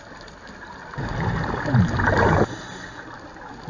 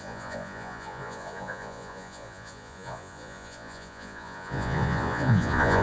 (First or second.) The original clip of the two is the first